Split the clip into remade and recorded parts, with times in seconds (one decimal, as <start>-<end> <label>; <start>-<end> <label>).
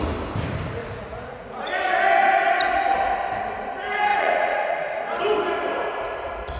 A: 0.0-0.8 recorded; 0.8-1.7 remade; 1.7-4.1 recorded; 4.1-5.2 remade; 5.2-6.6 recorded